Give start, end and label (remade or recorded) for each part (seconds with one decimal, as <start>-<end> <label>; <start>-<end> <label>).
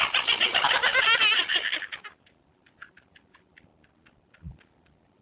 0.0-5.2 recorded